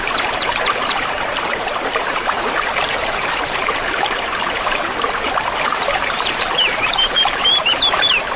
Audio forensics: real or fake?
fake